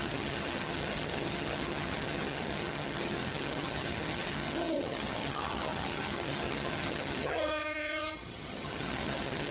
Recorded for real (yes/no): no